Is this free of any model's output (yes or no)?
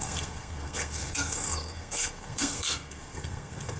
no